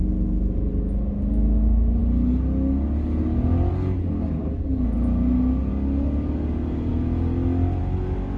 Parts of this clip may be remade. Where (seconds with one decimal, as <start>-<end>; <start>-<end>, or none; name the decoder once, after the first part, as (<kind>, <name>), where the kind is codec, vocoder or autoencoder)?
none